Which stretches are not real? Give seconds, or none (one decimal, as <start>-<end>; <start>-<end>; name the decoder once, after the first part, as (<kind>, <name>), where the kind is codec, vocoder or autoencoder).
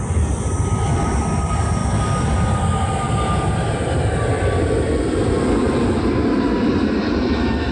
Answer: none